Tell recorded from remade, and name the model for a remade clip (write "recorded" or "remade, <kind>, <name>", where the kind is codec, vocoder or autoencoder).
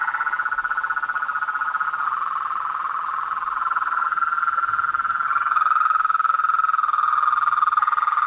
recorded